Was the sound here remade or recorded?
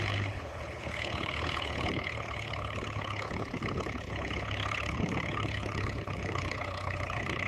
remade